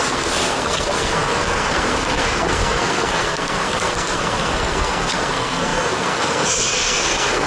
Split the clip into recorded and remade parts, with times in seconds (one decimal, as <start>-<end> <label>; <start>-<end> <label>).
0.0-7.5 remade